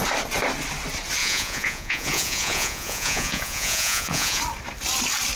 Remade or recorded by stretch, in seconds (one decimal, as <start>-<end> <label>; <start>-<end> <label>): 0.0-1.2 recorded; 1.2-4.4 remade; 4.4-5.4 recorded